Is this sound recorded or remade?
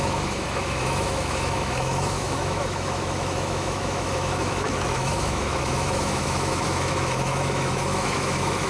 remade